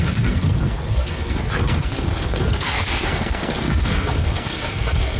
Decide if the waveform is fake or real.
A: fake